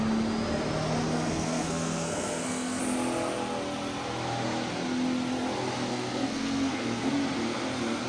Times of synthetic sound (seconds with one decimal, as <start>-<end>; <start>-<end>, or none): 1.1-2.8; 5.9-7.1